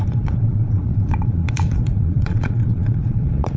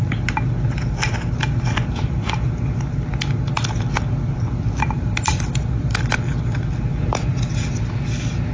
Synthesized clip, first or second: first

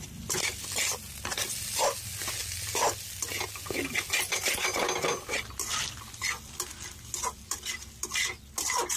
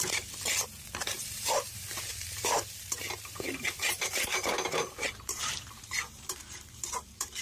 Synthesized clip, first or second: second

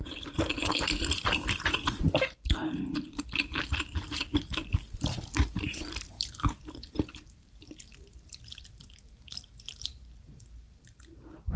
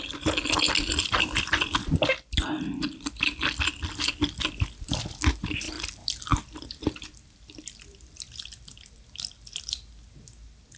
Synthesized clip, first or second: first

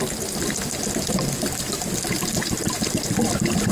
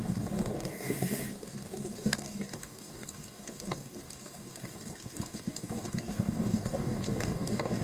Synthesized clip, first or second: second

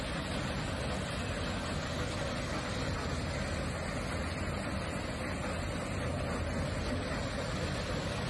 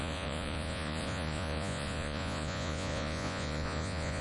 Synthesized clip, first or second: second